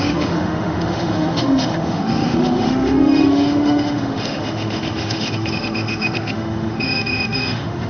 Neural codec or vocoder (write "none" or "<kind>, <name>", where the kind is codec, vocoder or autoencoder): autoencoder, DAC-VAE